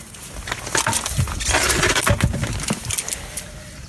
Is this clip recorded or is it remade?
recorded